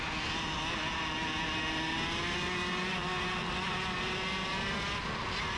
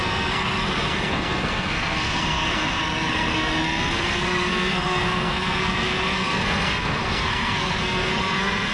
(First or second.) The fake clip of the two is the second